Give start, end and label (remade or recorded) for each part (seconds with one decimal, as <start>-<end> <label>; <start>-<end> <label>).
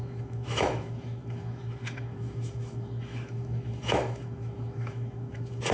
0.0-5.7 remade